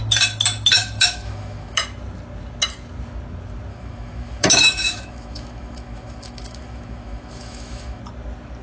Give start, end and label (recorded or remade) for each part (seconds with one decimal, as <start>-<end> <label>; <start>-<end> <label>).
0.0-0.7 recorded; 0.7-1.8 remade; 1.8-3.7 recorded; 3.7-8.0 remade; 8.0-8.6 recorded